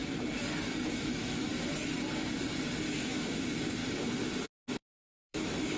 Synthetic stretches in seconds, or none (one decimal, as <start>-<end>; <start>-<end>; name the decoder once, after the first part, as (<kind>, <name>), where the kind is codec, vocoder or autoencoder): 0.9-1.5 (autoencoder, DAC-VAE); 2.9-3.8; 5.1-5.8